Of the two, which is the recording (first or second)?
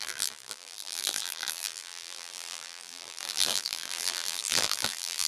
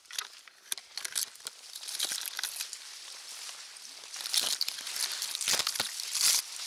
second